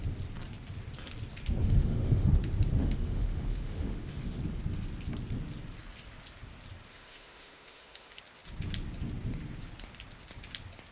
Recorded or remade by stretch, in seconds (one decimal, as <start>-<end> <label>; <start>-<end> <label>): 0.0-1.6 recorded; 1.6-2.3 remade; 2.3-2.8 recorded; 2.8-4.4 remade; 4.4-6.9 recorded; 6.9-8.2 remade; 8.2-10.9 recorded